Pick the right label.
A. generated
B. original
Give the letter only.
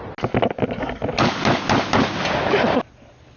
B